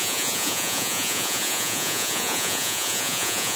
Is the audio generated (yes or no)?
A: yes